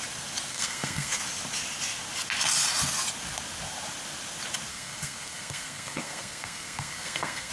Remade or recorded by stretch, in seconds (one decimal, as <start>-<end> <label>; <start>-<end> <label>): 0.0-0.5 recorded; 0.5-1.2 remade; 1.2-4.7 recorded; 4.7-7.5 remade

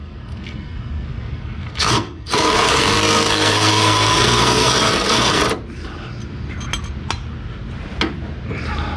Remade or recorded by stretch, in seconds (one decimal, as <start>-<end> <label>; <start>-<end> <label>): 0.0-5.4 remade; 5.4-9.0 recorded

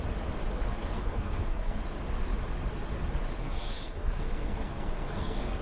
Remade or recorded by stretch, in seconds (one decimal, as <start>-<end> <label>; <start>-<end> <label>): 0.0-0.5 recorded; 0.5-1.8 remade; 1.8-3.4 recorded; 3.4-5.6 remade